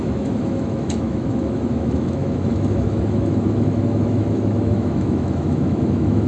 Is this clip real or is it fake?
fake